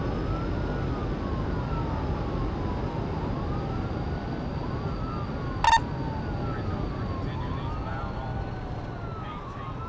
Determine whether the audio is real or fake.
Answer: real